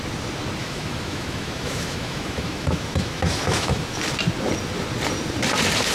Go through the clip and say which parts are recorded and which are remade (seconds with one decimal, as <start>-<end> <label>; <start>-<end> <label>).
0.0-0.6 recorded; 0.6-4.0 remade; 4.0-5.9 recorded